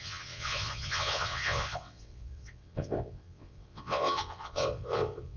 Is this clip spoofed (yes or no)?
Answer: yes